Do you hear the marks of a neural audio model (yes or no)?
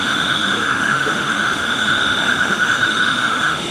yes